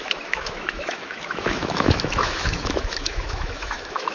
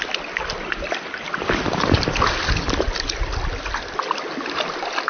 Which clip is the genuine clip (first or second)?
second